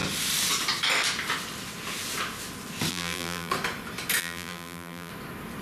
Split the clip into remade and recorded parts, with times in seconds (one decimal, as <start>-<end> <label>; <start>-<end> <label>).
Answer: 0.0-2.9 recorded; 2.9-3.5 remade; 3.5-4.2 recorded; 4.2-5.1 remade; 5.1-5.6 recorded